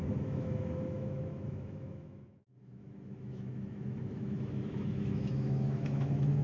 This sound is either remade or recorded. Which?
remade